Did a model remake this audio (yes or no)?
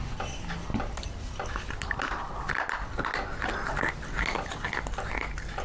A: no